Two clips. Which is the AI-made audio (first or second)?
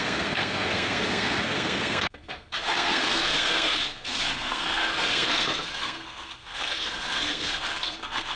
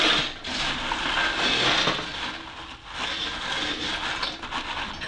first